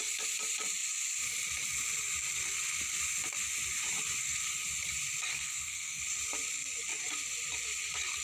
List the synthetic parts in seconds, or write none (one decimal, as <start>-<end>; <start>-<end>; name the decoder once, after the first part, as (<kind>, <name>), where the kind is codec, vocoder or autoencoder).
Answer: 5.3-6.0 (codec, SNAC)